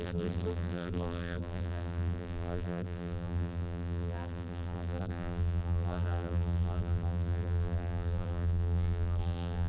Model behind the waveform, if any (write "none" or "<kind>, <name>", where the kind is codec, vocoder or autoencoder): vocoder, BigVGAN v2